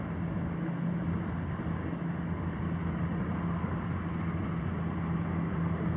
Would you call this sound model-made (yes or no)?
no